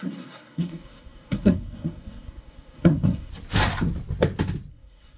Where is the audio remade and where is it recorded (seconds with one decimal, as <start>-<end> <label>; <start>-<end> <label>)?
0.0-3.3 remade; 3.3-4.7 recorded; 4.7-5.2 remade